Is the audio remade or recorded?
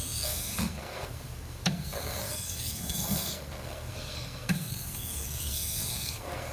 remade